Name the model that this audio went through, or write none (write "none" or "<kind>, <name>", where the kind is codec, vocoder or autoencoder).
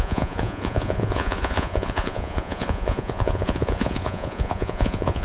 vocoder, Vocos